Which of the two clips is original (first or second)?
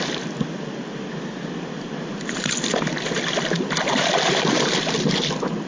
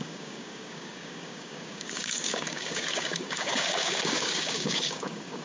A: first